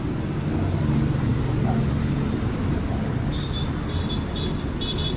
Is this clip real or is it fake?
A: real